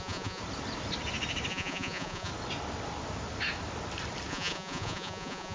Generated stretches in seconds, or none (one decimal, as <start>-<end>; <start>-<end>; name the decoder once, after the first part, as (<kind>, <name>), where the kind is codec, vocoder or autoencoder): 0.0-0.4 (vocoder, Vocos); 1.5-2.3; 4.3-5.5